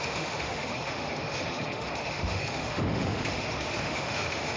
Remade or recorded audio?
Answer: remade